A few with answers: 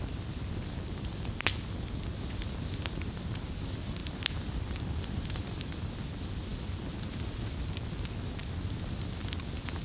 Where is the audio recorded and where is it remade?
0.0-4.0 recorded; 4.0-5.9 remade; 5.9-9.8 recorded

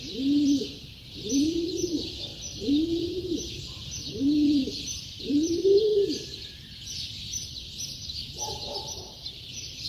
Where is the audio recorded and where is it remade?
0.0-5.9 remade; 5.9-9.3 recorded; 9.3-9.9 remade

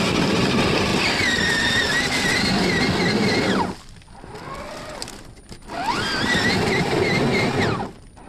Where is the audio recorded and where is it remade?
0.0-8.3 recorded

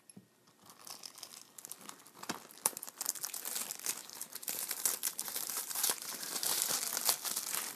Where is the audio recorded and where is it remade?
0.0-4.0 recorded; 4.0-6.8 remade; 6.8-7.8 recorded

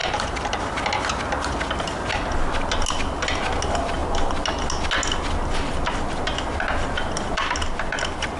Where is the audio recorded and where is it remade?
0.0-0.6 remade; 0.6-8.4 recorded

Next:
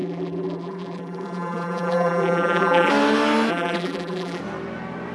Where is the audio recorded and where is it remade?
0.0-2.9 remade; 2.9-3.5 recorded; 3.5-4.4 remade; 4.4-5.1 recorded